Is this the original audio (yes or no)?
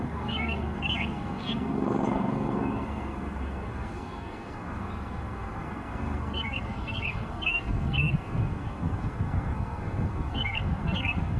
no